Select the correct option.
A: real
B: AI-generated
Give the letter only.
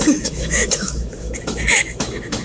B